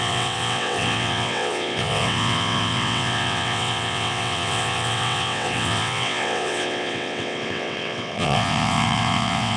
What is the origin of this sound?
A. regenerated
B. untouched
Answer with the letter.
A